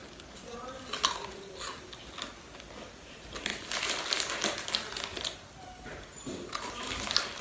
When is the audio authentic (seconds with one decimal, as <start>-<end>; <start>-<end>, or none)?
1.1-7.4